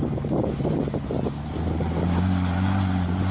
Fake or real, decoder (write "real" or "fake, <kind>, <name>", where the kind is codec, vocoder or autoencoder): real